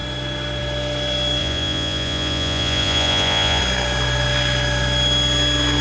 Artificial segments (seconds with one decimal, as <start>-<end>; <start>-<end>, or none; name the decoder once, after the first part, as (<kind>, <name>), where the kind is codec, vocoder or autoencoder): 1.4-3.6 (vocoder, Vocos)